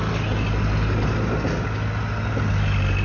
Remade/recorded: recorded